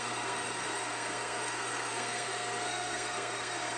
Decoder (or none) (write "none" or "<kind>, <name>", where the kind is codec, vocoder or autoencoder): codec, SNAC